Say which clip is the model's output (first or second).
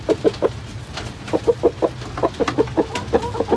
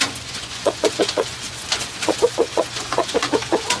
second